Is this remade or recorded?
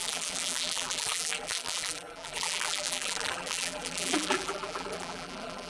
remade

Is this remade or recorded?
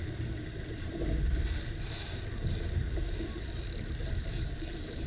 remade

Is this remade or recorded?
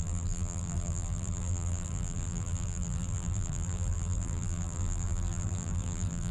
remade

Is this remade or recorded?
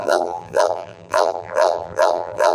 remade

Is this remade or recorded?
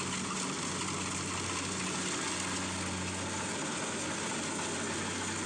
recorded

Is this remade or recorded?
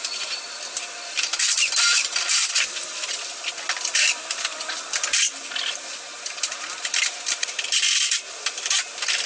remade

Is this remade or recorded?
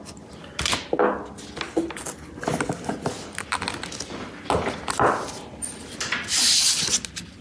recorded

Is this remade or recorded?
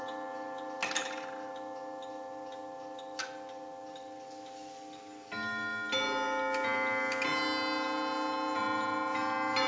recorded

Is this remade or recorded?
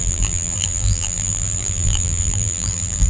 remade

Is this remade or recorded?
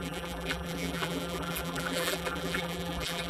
remade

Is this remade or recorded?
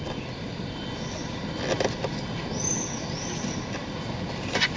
recorded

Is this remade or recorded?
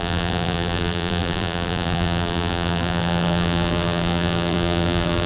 remade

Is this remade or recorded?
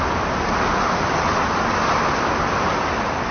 remade